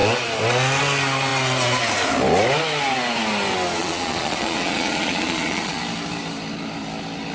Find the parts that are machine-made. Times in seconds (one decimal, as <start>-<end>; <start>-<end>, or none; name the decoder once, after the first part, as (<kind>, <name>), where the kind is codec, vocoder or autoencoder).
3.8-5.8 (vocoder, Vocos)